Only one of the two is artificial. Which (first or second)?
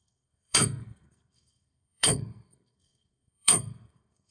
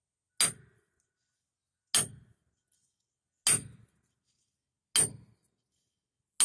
first